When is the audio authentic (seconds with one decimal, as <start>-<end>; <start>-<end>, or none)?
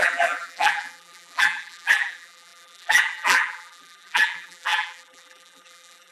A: none